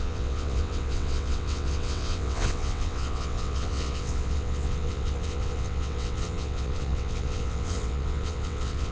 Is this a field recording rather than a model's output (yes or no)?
no